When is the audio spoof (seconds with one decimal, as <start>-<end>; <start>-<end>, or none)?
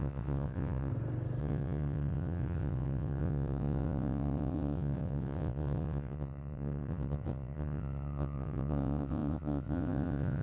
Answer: 0.0-0.9; 1.4-10.4